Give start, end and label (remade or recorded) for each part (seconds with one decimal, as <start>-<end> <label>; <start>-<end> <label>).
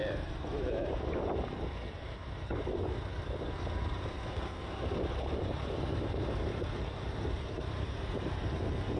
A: 0.0-9.0 remade